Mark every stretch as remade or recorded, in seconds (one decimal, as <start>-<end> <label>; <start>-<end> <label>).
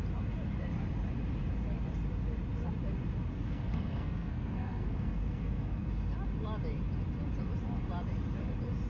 0.0-3.3 recorded; 3.3-5.9 remade; 5.9-8.9 recorded